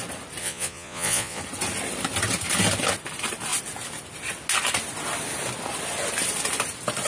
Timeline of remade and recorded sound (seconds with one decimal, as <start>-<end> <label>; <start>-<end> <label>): 0.0-0.4 recorded; 0.4-1.4 remade; 1.4-7.1 recorded

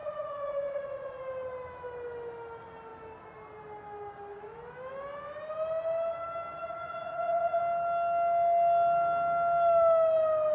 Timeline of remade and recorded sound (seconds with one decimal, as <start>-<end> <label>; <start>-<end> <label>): 0.0-1.2 remade; 1.2-6.6 recorded; 6.6-7.6 remade; 7.6-10.5 recorded